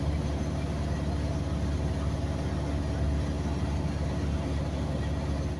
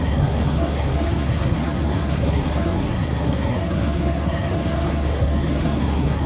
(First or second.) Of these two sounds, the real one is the first